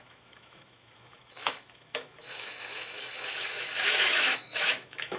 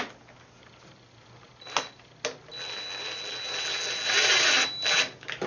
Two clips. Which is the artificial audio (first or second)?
first